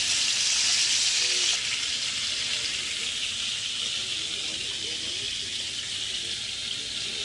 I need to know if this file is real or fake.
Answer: real